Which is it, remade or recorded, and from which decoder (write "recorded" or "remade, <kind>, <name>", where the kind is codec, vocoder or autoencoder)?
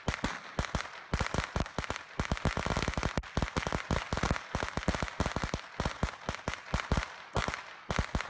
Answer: recorded